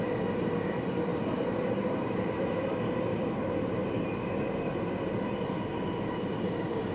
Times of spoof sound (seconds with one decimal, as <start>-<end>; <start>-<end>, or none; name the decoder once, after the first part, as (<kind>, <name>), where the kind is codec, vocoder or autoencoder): 1.1-4.9 (vocoder, BigVGAN v2)